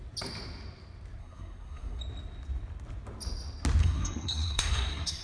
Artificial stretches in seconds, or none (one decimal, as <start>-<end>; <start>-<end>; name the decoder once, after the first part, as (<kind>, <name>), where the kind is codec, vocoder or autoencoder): 1.2-2.0 (codec, SNAC); 3.8-5.2